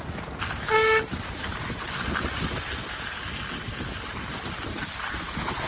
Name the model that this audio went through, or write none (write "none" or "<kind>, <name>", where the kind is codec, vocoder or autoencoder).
none